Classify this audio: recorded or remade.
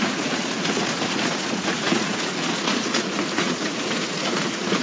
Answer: remade